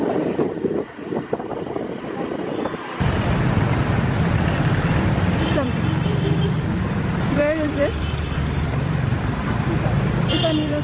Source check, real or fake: fake